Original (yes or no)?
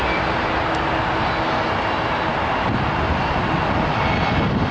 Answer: yes